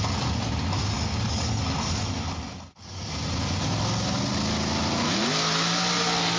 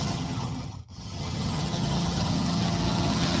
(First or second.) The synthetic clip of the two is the second